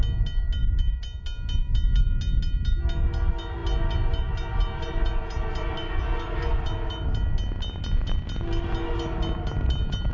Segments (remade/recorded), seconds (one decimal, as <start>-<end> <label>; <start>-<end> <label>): 0.0-10.1 recorded